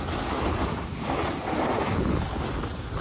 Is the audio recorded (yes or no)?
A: yes